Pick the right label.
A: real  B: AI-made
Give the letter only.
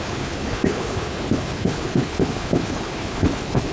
B